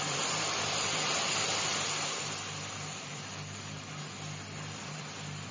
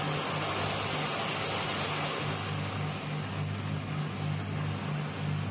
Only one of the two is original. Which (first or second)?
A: second